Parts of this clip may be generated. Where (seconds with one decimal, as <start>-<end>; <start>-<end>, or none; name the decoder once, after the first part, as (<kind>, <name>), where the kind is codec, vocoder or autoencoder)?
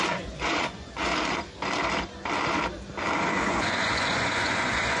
0.0-1.1 (vocoder, Vocos); 3.2-5.0